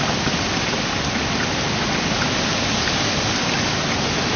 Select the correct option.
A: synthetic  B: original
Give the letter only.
B